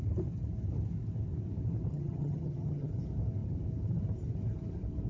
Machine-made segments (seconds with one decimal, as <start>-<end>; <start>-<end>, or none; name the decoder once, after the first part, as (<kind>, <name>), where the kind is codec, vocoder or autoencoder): 1.9-2.9 (vocoder, HiFi-GAN)